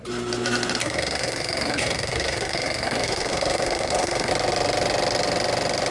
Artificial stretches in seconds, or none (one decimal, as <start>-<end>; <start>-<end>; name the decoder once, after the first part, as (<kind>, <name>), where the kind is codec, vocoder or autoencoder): 0.8-4.3 (codec, SNAC)